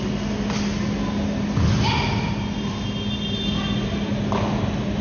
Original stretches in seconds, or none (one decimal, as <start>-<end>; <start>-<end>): 0.0-5.0